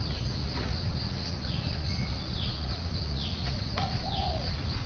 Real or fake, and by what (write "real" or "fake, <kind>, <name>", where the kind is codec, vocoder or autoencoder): fake, vocoder, Vocos